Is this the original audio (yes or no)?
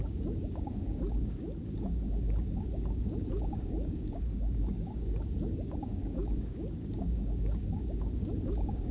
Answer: no